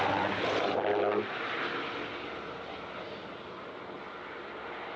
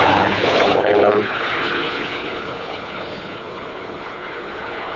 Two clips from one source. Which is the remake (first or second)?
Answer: second